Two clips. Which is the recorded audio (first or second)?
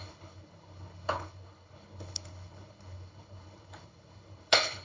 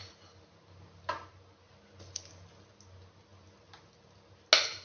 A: second